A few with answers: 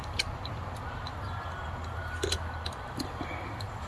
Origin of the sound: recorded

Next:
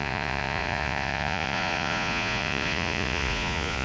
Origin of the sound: remade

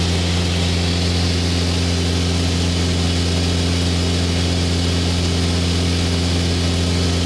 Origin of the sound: recorded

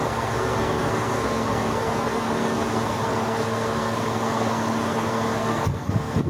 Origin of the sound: remade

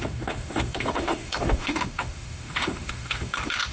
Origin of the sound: remade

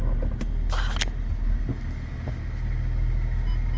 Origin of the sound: recorded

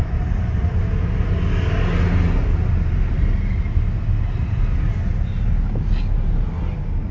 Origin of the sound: recorded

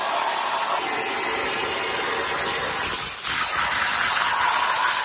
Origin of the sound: recorded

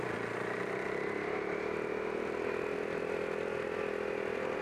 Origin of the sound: recorded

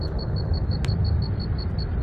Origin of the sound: recorded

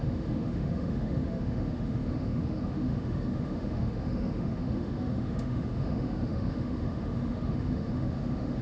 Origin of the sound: remade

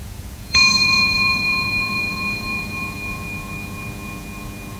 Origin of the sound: remade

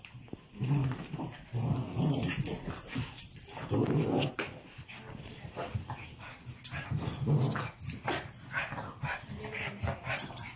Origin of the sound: recorded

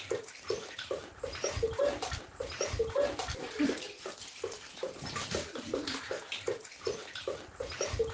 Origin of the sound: recorded